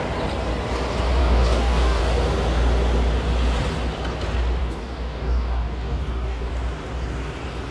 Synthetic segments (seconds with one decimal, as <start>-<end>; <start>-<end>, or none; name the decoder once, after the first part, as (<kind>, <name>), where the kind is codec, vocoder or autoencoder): 1.2-2.0 (codec, DAC); 4.6-6.5